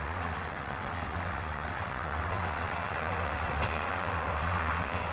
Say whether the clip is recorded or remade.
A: remade